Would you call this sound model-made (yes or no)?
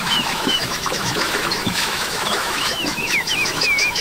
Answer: yes